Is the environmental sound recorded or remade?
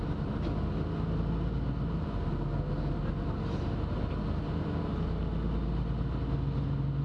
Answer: recorded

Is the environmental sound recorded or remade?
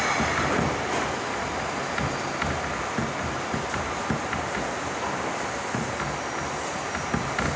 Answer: recorded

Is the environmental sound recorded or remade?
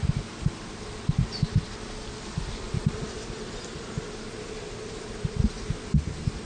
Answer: recorded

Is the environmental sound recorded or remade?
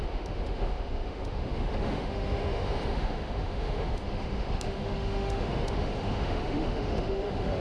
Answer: remade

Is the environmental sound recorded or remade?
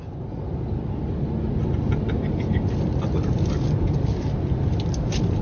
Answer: recorded